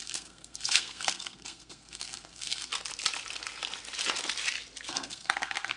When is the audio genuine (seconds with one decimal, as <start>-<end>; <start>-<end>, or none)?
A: 2.7-4.9